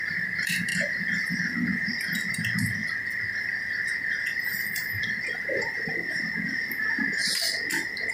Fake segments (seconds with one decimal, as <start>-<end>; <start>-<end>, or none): 0.0-2.8; 5.3-7.2